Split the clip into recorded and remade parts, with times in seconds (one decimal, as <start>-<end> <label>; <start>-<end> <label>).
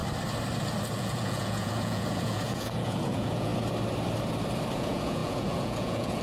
0.0-1.0 recorded; 1.0-3.5 remade; 3.5-4.7 recorded; 4.7-6.2 remade